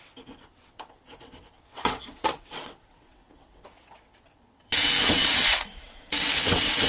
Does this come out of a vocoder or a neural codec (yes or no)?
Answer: yes